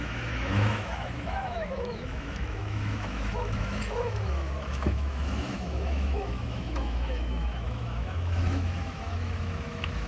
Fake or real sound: fake